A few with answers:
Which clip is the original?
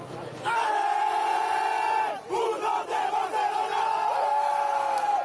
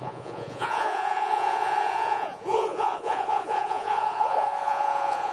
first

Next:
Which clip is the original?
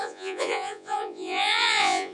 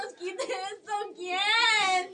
second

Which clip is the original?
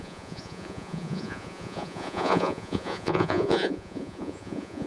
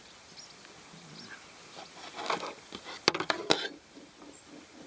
second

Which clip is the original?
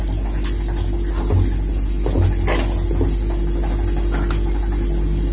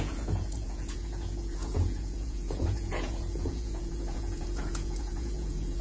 first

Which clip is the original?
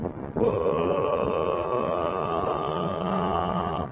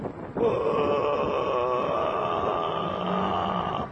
second